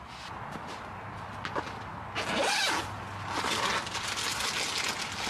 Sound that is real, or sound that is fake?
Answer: real